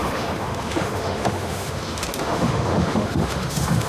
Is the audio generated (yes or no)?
yes